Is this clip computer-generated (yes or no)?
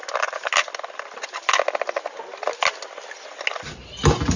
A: no